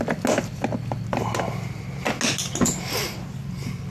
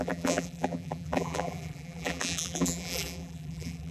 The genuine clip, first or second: first